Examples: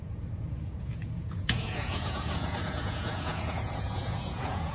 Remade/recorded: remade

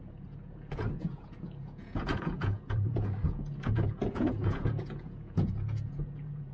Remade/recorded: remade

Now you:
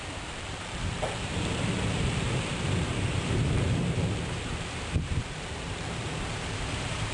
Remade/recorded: remade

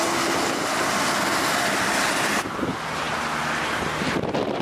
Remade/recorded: recorded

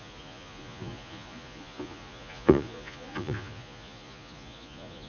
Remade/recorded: remade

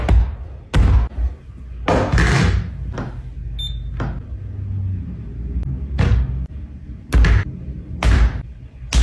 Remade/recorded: recorded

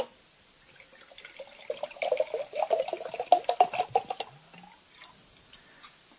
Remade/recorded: recorded